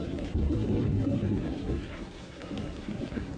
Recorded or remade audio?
remade